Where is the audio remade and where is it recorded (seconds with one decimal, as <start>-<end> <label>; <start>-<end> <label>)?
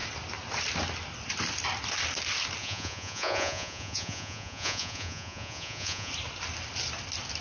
0.0-2.6 recorded; 2.6-6.1 remade; 6.1-7.4 recorded